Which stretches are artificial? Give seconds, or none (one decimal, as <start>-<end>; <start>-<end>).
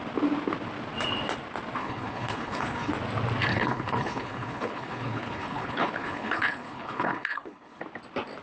1.8-2.9; 3.5-7.8